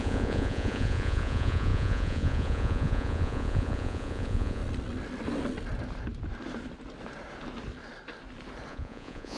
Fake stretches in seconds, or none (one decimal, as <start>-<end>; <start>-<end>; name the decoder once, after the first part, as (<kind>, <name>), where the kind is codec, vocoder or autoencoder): 0.0-4.6 (vocoder, Vocos); 8.7-9.4